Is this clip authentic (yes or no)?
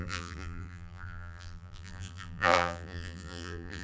no